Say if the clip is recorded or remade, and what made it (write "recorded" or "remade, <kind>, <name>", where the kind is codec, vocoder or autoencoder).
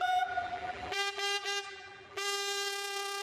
remade, vocoder, BigVGAN v2